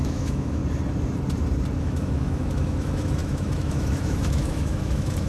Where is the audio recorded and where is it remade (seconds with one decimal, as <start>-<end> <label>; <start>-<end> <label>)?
0.0-0.6 remade; 0.6-1.8 recorded; 1.8-5.3 remade